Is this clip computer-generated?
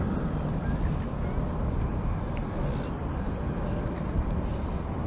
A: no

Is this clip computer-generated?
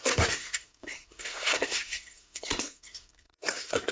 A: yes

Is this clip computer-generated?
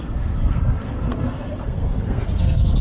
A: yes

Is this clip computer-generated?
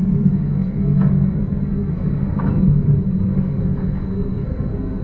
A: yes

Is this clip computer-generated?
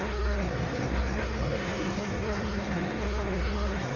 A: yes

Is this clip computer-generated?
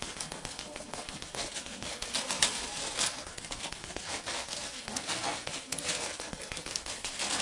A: yes